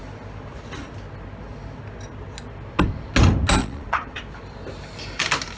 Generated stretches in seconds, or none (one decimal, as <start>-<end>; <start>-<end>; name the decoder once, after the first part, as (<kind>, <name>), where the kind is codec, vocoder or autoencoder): 3.6-4.2 (vocoder, Vocos)